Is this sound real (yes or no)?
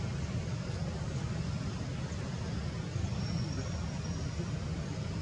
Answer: yes